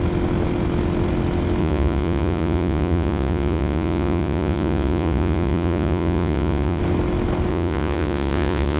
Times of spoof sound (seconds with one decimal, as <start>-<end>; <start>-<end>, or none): 1.6-6.8; 7.5-8.8